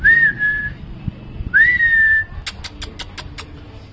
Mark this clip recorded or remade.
recorded